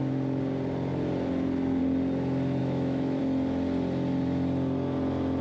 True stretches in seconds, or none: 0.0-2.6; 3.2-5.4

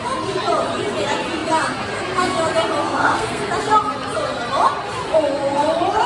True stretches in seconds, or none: 0.0-2.8; 3.5-6.1

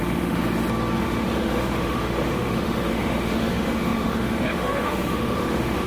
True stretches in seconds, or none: 0.4-1.0

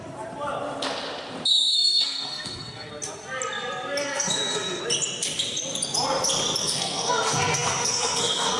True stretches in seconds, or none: 0.0-1.5; 2.9-4.0; 4.8-6.6

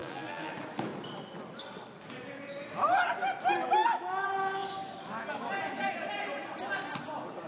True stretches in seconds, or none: 0.5-7.5